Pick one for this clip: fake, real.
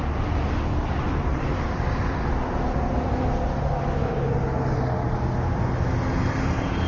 real